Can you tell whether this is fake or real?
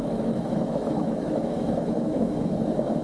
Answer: fake